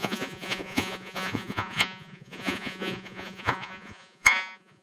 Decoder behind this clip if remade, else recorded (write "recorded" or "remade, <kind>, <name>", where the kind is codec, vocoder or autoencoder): remade, vocoder, Vocos